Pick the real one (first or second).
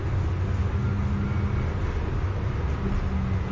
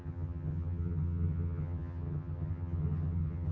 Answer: first